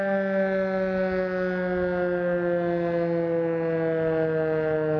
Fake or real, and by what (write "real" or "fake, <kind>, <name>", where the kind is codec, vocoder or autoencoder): real